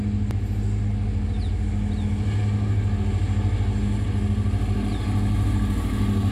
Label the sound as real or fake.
real